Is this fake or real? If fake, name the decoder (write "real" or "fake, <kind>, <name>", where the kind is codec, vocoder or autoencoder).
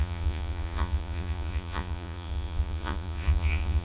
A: fake, vocoder, Vocos